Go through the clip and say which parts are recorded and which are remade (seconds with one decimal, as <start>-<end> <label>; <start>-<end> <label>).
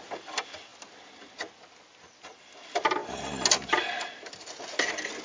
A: 0.0-5.2 recorded